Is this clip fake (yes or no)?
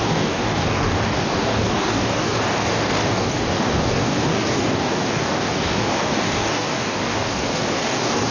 yes